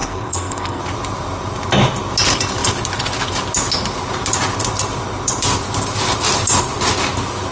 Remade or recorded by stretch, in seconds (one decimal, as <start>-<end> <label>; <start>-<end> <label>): 0.0-0.8 remade; 0.8-7.5 recorded